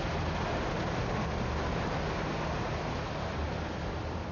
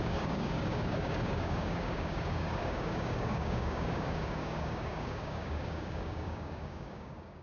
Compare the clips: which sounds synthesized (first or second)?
second